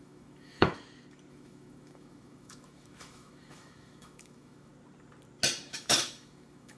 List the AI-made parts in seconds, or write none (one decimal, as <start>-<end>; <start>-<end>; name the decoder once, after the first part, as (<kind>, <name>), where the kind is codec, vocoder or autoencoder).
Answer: 0.0-0.7 (autoencoder, DAC-VAE); 1.3-4.7; 5.7-6.8